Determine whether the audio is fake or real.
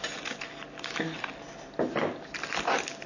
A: real